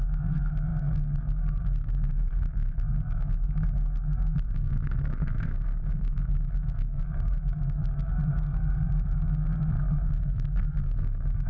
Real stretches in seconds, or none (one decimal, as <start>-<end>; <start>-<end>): none